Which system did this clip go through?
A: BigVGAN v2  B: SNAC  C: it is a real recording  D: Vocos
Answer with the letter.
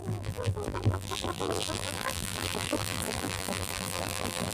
A